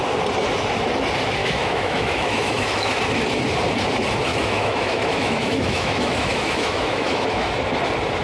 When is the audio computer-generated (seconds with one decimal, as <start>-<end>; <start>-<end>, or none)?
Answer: 1.4-3.0; 4.3-7.5

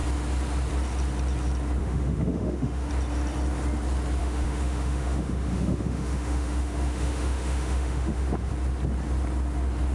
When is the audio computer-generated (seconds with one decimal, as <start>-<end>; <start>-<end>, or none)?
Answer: 1.8-2.9; 4.2-8.5